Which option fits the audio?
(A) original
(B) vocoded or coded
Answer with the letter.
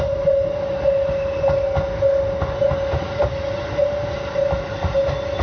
A